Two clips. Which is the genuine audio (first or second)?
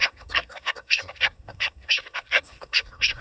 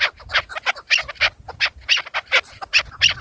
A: second